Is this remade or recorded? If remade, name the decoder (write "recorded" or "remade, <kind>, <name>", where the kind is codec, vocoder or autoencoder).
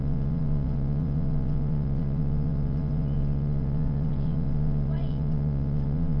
remade, vocoder, WaveNeXt